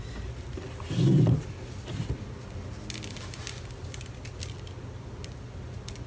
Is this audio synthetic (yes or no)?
no